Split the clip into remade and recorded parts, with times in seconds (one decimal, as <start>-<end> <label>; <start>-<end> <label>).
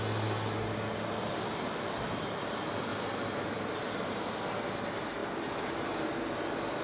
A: 0.0-6.8 recorded